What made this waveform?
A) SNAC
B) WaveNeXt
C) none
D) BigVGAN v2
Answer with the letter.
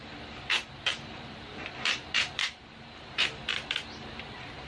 D